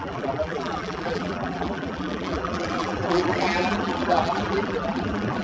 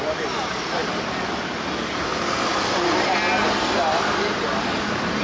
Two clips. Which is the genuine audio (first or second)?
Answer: second